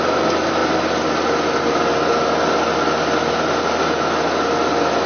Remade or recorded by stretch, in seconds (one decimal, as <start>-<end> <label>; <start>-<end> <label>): 0.0-5.1 recorded